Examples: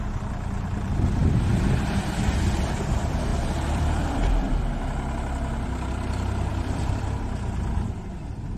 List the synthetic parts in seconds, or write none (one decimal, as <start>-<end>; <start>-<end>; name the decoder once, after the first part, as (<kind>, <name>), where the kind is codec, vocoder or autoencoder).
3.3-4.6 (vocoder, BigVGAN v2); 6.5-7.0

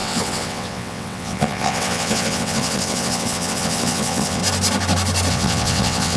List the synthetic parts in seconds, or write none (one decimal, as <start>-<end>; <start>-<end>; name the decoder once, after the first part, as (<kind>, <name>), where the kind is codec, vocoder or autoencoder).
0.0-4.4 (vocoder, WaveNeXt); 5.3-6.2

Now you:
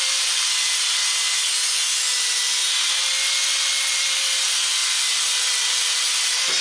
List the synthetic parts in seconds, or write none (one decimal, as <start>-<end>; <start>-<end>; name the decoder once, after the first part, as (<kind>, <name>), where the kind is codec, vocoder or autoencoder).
0.0-1.0 (vocoder, BigVGAN v2); 2.0-2.6; 3.6-6.6